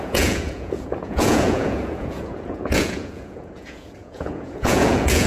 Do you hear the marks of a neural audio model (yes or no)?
yes